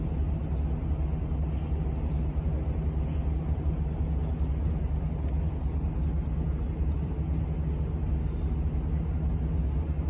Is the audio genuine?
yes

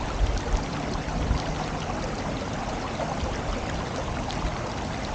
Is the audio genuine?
yes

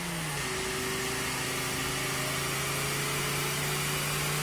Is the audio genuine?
yes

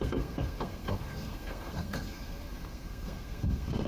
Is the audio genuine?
no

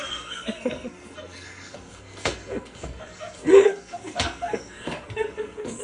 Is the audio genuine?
no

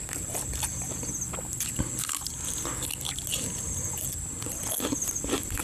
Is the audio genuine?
yes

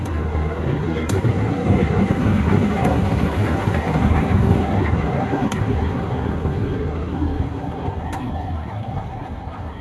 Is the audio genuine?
no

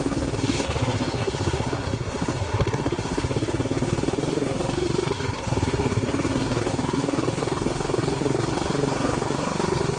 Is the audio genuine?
no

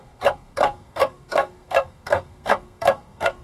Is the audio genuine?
no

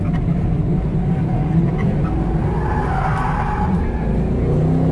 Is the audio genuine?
yes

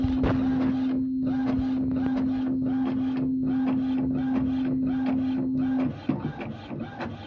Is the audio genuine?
yes